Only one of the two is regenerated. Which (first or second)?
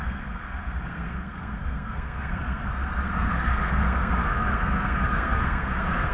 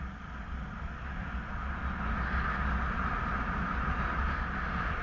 first